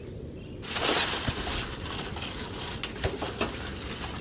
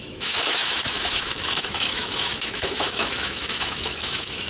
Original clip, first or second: first